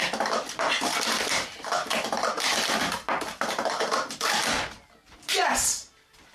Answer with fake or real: real